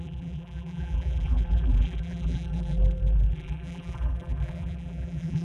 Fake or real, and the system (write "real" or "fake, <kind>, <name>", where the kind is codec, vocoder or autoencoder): fake, vocoder, BigVGAN v2